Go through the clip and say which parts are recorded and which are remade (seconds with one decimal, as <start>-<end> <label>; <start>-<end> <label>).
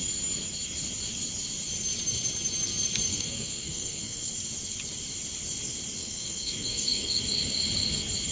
0.0-3.1 recorded; 3.1-4.3 remade; 4.3-6.0 recorded; 6.0-7.2 remade; 7.2-8.3 recorded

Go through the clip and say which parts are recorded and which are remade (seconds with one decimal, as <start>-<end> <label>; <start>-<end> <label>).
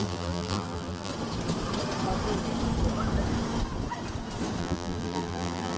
0.0-1.1 remade; 1.1-4.6 recorded; 4.6-5.8 remade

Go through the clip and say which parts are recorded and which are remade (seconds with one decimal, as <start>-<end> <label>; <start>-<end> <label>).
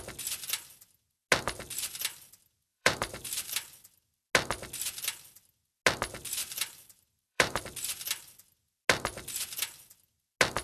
0.0-2.7 recorded; 2.7-3.5 remade; 3.5-6.4 recorded; 6.4-7.6 remade; 7.6-10.6 recorded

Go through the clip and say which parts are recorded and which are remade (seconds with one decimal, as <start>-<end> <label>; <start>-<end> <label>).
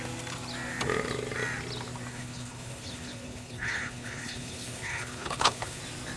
0.0-2.1 recorded; 2.1-5.8 remade; 5.8-6.2 recorded